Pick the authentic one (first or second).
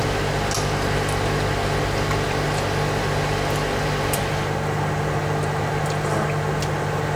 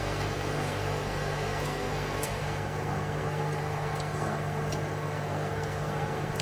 first